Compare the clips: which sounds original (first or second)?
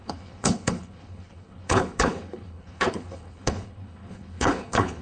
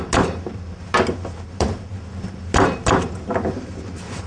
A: second